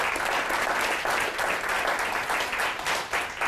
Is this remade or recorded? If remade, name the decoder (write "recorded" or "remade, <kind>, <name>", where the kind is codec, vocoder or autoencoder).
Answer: recorded